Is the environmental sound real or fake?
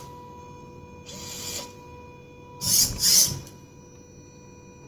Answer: real